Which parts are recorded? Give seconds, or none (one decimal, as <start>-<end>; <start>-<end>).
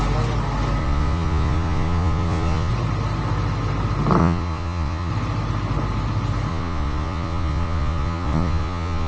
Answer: 0.0-0.8; 2.7-4.2; 5.1-6.5